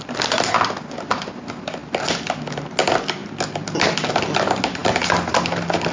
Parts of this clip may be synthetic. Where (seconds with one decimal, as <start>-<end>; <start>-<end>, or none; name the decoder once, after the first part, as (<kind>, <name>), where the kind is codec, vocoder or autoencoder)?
none

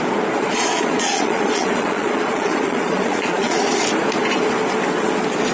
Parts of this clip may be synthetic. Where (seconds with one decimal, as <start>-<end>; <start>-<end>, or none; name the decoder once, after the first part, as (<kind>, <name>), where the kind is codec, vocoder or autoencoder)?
0.4-3.7 (vocoder, Vocos)